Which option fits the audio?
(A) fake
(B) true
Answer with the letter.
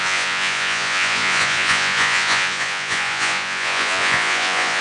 A